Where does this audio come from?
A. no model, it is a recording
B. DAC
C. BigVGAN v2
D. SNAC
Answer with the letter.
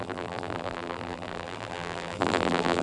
C